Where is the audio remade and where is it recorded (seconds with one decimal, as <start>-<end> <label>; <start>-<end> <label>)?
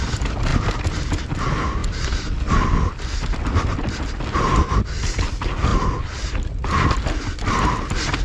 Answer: 0.0-8.2 recorded